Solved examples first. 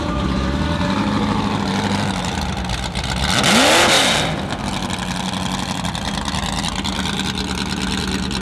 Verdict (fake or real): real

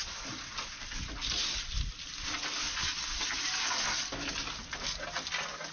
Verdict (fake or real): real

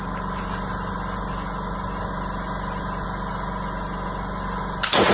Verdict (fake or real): real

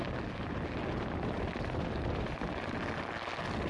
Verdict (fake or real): real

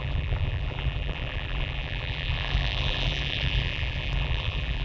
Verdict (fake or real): fake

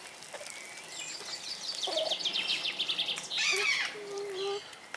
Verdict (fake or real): fake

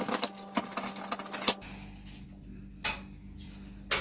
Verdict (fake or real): real